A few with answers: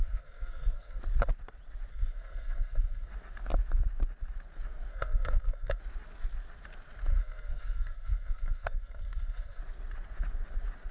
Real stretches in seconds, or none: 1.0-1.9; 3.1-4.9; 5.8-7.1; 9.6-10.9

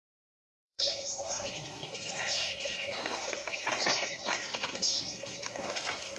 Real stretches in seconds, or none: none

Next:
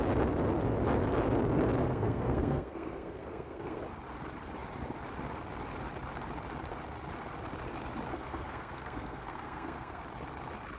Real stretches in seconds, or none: 0.0-1.8; 3.8-8.1; 10.0-10.8

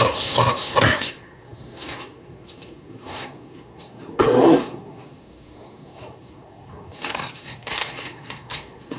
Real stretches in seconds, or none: none

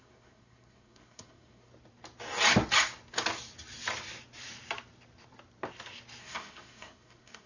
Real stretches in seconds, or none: 1.7-6.2

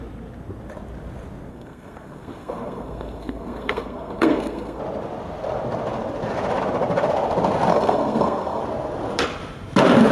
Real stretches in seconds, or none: 0.0-1.5; 4.8-7.7; 8.6-10.1

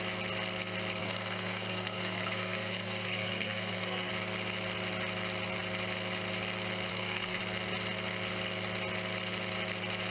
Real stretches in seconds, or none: 0.0-1.0; 4.1-6.9; 7.4-10.1

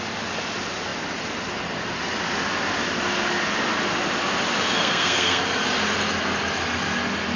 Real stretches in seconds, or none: 0.0-4.8; 5.4-7.4